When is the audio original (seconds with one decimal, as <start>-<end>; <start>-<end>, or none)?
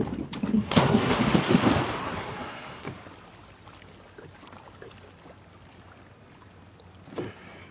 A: 0.0-0.5; 1.1-2.0; 2.9-7.7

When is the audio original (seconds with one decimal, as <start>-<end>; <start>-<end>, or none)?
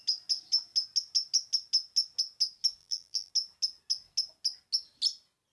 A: 0.0-2.8; 3.3-5.5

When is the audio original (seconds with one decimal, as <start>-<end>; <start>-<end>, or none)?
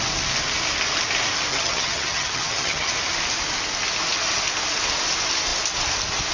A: 0.0-1.5; 2.9-6.3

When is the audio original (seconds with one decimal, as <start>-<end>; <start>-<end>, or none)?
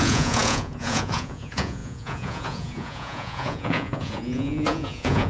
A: none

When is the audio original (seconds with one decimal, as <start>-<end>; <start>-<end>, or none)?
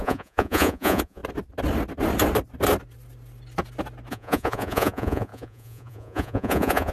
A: 1.2-4.1